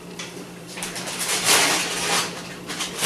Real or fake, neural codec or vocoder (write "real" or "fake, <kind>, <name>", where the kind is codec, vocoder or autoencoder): fake, vocoder, BigVGAN v2